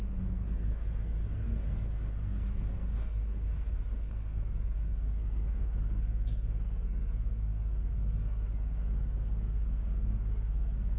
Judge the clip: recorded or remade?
remade